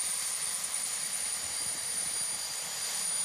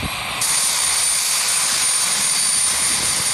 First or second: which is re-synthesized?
first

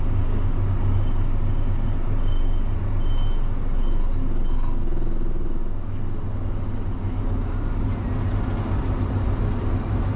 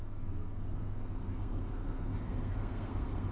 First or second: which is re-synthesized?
second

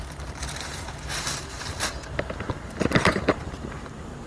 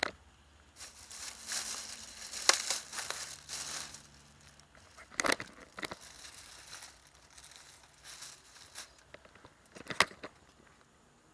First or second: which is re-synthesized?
first